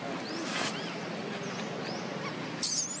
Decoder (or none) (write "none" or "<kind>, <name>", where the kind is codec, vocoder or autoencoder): none